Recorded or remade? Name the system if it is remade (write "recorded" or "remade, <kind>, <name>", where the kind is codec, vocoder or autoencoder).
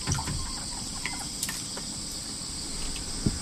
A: remade, vocoder, BigVGAN v2